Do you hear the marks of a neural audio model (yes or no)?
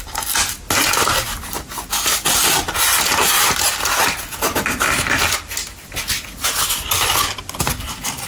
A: no